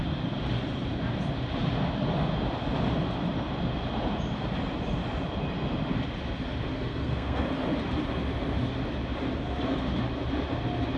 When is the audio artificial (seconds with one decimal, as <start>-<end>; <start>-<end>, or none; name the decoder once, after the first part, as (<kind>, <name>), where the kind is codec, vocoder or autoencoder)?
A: 6.7-7.4 (codec, SNAC)